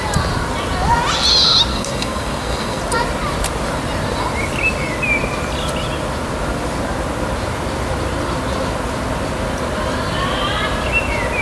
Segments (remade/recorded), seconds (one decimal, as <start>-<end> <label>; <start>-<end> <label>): 0.0-1.7 recorded; 1.7-2.8 remade; 2.8-11.4 recorded